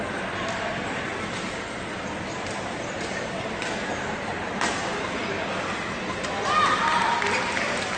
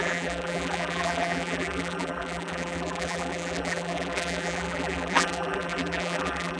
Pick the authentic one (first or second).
first